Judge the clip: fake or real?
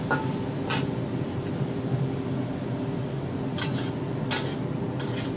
real